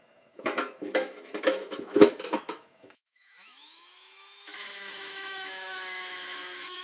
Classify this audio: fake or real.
fake